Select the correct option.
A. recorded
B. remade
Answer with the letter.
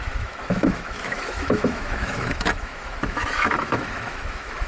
B